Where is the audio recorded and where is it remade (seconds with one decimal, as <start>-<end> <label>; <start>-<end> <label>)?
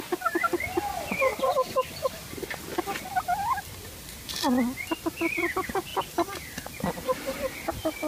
0.0-1.3 recorded; 1.3-5.5 remade; 5.5-5.9 recorded; 5.9-8.1 remade